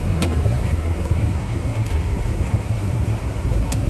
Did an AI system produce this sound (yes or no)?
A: yes